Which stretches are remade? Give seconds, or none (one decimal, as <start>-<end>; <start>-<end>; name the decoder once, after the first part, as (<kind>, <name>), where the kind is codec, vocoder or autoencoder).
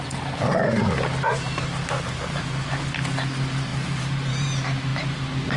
1.3-2.7 (vocoder, BigVGAN v2); 3.7-4.5